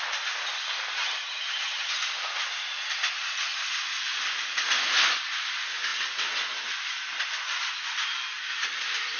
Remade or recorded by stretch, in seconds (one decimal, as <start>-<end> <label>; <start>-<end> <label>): 0.0-1.0 recorded; 1.0-1.9 remade; 1.9-9.2 recorded

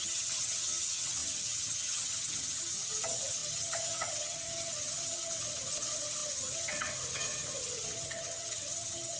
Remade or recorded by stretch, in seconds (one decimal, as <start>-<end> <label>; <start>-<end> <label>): 0.0-9.2 remade